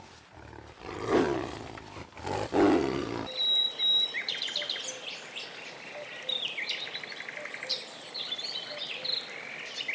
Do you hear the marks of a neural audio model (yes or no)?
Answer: no